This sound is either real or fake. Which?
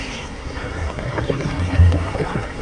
fake